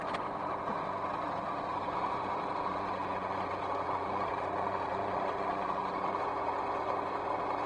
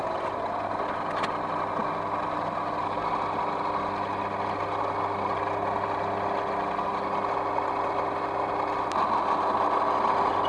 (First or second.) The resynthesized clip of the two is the first